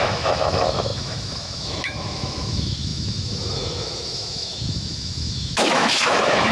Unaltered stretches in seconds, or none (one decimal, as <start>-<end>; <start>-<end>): none